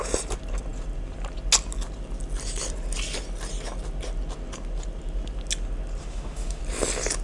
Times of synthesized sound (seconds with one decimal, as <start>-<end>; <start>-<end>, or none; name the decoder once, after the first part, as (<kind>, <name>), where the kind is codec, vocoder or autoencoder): 6.0-6.6 (autoencoder, DAC-VAE)